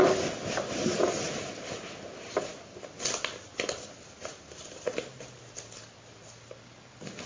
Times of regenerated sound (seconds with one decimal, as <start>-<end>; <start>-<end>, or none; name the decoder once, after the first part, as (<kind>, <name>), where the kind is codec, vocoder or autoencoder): none